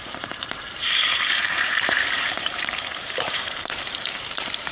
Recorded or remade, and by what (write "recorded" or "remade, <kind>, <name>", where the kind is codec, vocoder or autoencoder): remade, vocoder, BigVGAN v2